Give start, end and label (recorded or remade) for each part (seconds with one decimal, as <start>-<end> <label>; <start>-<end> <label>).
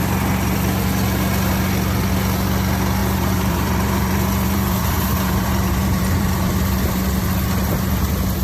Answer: 0.0-3.0 recorded; 3.0-6.5 remade; 6.5-8.4 recorded